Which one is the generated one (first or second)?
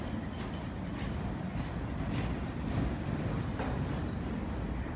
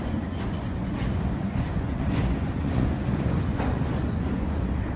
second